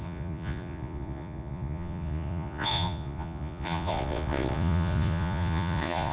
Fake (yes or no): yes